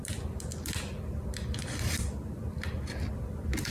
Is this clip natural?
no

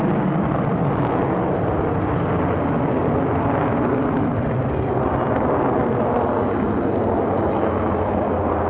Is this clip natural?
yes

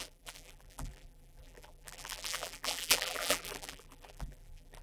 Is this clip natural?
no